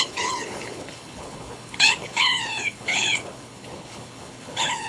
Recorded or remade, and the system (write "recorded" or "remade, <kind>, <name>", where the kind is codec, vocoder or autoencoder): remade, codec, HILCodec